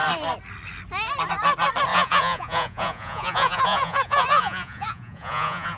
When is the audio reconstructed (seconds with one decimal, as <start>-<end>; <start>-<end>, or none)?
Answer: 1.9-5.8